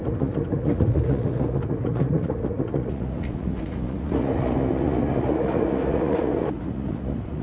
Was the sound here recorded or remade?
remade